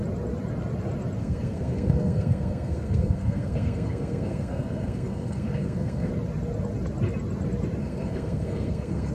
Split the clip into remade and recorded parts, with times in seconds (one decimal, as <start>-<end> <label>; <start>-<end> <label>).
0.0-1.2 recorded; 1.2-6.1 remade; 6.1-7.8 recorded; 7.8-9.1 remade